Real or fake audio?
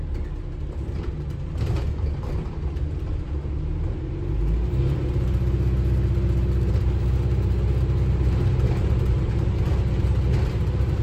real